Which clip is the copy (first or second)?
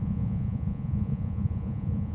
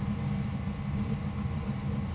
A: first